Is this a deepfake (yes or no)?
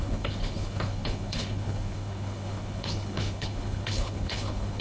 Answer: yes